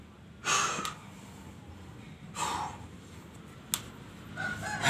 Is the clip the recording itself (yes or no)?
yes